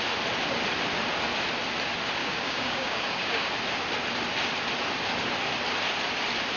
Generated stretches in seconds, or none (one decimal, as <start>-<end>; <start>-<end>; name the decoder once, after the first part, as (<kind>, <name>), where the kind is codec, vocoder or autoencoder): 2.2-3.5 (codec, DAC)